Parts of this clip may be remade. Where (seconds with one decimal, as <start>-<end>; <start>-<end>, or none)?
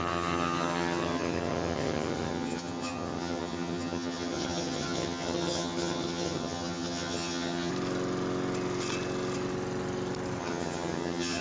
0.0-7.7; 10.4-11.4